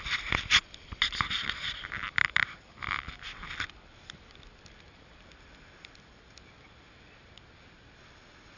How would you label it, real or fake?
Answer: real